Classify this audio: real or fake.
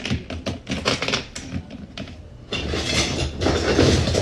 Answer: real